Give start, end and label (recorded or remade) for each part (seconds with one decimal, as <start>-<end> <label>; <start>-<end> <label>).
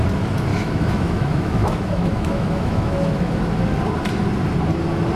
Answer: 0.0-0.5 recorded; 0.5-3.6 remade; 3.6-5.2 recorded